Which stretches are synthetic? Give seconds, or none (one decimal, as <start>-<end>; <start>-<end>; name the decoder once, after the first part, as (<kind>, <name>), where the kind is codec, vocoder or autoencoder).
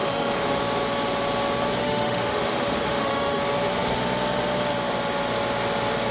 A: 0.0-0.6 (autoencoder, DAC-VAE); 1.8-3.4